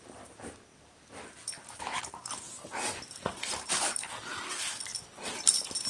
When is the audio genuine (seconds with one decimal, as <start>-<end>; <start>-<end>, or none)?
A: 0.0-0.7; 4.2-5.9